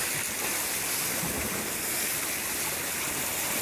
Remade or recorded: recorded